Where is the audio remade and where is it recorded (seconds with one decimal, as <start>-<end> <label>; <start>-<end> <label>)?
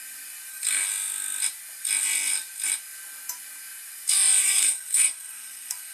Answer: 0.0-0.5 recorded; 0.5-0.9 remade; 0.9-4.4 recorded; 4.4-5.9 remade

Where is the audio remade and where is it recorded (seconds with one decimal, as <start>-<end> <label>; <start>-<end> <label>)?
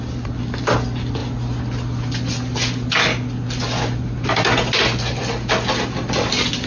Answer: 0.0-6.7 recorded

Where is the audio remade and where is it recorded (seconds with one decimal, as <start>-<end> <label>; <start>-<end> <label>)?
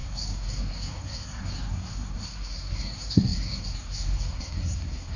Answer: 0.0-5.2 remade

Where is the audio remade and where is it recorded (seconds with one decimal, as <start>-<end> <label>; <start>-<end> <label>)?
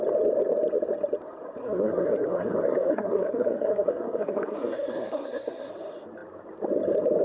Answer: 0.0-1.6 recorded; 1.6-5.7 remade; 5.7-7.2 recorded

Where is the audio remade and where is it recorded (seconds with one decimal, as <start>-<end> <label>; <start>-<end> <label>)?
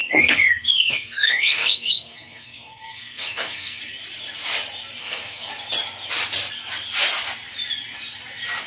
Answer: 0.0-3.8 remade; 3.8-5.0 recorded; 5.0-5.5 remade; 5.5-8.7 recorded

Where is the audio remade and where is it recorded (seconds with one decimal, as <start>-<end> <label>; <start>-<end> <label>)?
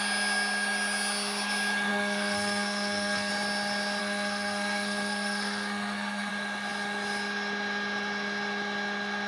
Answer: 0.0-1.9 recorded; 1.9-3.3 remade; 3.3-4.0 recorded; 4.0-6.3 remade; 6.3-9.3 recorded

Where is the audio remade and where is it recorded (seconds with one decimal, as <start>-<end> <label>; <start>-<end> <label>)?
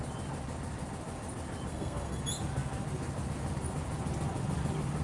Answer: 0.0-1.7 recorded; 1.7-2.2 remade; 2.2-5.0 recorded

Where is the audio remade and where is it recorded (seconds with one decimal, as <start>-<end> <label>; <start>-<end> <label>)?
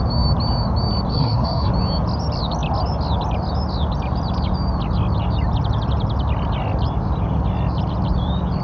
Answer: 0.0-1.1 recorded; 1.1-1.7 remade; 1.7-8.6 recorded